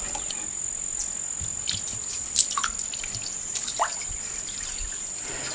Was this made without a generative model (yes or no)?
yes